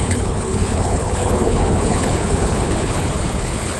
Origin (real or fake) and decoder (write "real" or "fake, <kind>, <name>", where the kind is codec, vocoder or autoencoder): fake, codec, HILCodec